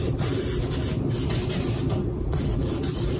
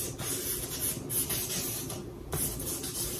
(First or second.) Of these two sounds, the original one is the second